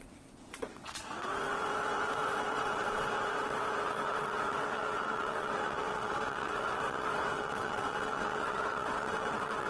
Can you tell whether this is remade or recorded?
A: remade